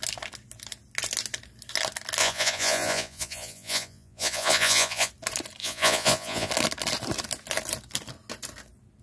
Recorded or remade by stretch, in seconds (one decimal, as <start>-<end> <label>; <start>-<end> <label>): 0.0-2.2 recorded; 2.2-5.1 remade; 5.1-5.6 recorded; 5.6-6.5 remade; 6.5-9.0 recorded